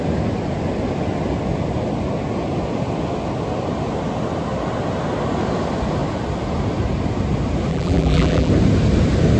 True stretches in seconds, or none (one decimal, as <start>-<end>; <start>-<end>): 0.0-7.7; 8.5-9.4